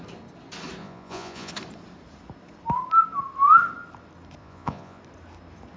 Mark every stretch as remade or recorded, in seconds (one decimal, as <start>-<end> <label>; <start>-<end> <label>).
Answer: 0.0-0.8 recorded; 0.8-1.5 remade; 1.5-4.4 recorded; 4.4-5.0 remade; 5.0-5.8 recorded